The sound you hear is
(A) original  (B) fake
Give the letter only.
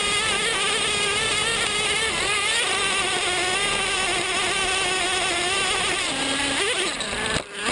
A